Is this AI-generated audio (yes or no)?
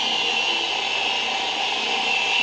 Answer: no